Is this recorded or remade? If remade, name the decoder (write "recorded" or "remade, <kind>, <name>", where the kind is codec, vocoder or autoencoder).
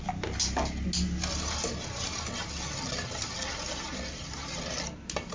recorded